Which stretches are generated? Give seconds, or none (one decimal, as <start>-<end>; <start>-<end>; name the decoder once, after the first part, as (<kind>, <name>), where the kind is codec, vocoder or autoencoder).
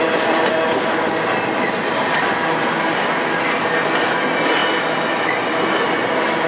none